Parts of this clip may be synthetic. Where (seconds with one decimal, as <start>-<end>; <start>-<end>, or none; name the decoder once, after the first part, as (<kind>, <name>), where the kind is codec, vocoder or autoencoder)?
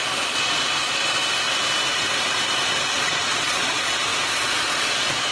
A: 0.0-1.2 (vocoder, Vocos); 3.0-5.3